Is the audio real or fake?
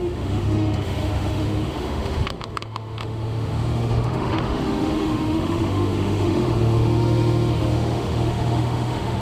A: fake